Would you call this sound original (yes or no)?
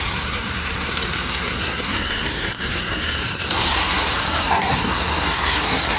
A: no